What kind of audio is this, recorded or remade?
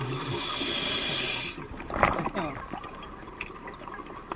recorded